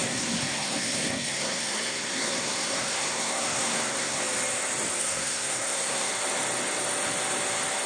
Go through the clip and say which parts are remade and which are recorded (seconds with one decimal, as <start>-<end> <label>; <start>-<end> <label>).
0.0-4.2 remade; 4.2-5.0 recorded; 5.0-6.1 remade; 6.1-7.9 recorded